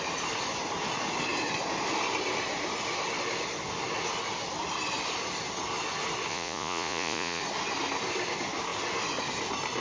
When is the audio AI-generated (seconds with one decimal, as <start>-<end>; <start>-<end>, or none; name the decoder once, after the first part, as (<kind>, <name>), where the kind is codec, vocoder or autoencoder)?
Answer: 6.3-7.4 (vocoder, Vocos)